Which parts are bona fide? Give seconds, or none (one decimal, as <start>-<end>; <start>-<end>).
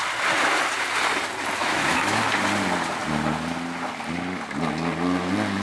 0.0-1.6; 2.2-5.6